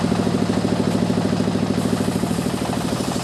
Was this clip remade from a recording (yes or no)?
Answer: no